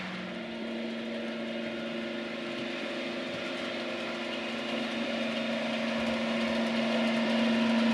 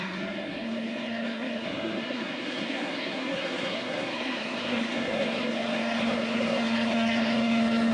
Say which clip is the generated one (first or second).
second